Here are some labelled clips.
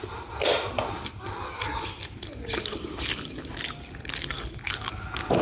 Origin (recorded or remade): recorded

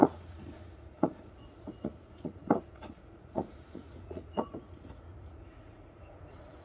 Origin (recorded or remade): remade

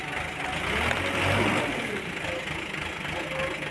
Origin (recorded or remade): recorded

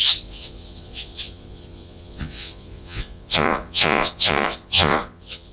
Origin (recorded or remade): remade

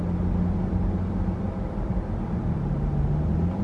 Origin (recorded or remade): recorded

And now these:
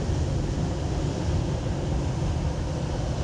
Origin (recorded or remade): recorded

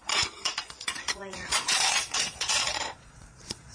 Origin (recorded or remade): remade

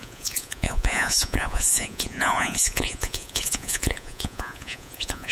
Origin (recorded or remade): remade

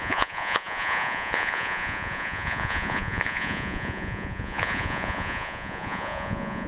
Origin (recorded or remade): remade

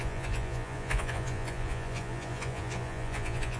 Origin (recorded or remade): remade